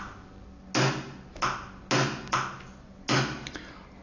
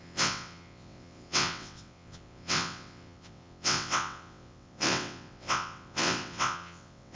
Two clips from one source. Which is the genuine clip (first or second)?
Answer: first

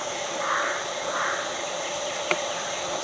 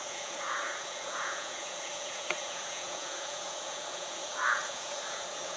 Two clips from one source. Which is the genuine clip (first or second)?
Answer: first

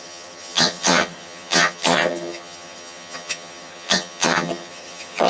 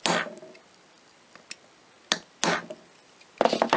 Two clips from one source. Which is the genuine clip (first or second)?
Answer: second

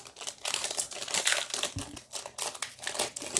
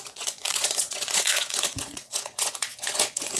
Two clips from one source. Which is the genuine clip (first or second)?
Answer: first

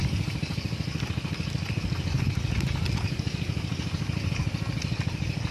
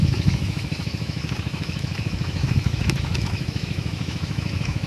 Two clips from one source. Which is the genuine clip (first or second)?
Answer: first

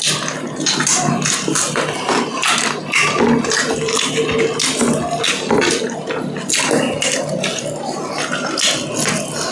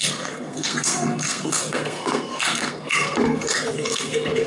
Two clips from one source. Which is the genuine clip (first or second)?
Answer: first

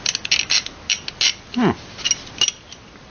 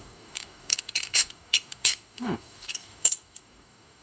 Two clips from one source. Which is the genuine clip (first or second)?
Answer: first